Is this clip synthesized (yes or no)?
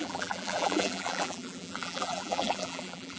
yes